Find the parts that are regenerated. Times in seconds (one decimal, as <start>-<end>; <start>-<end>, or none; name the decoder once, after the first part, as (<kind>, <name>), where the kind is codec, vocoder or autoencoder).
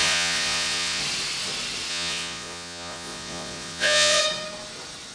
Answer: 0.0-1.0 (vocoder, Vocos); 1.9-4.2